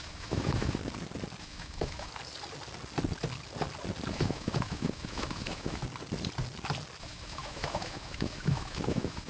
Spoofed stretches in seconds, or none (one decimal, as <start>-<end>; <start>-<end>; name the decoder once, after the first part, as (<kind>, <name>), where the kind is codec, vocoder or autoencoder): 0.0-0.8 (autoencoder, DAC-VAE); 1.4-2.1; 4.1-5.8; 7.0-9.3